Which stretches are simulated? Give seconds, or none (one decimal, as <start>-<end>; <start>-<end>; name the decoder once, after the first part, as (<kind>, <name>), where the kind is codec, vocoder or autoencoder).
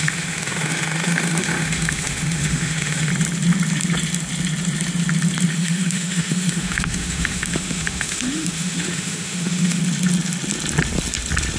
0.0-3.1 (autoencoder, DAC-VAE); 5.5-9.8